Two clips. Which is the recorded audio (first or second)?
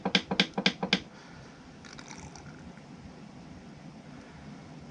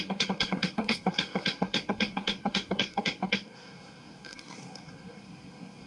first